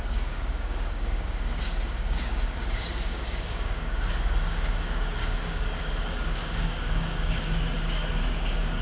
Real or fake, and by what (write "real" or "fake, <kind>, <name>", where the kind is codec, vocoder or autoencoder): fake, codec, DAC